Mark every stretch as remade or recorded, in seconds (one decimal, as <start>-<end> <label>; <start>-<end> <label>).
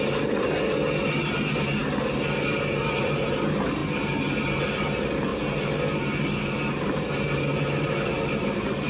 0.0-8.9 recorded